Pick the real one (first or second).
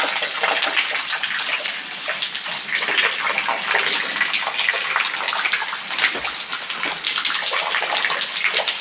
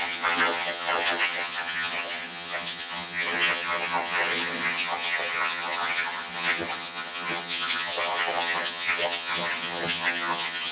first